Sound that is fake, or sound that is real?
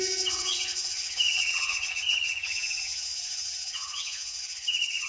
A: fake